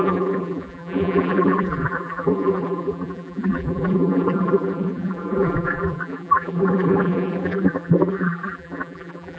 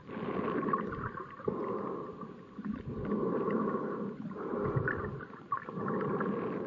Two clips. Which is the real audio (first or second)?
second